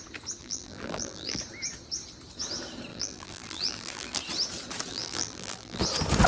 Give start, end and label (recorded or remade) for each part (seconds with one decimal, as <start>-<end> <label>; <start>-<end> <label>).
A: 0.0-0.4 recorded; 0.4-1.4 remade; 1.4-2.9 recorded; 2.9-4.2 remade; 4.2-4.9 recorded; 4.9-5.8 remade; 5.8-6.3 recorded